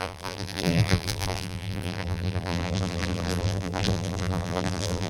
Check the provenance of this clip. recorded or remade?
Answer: remade